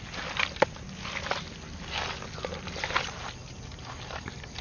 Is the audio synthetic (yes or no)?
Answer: no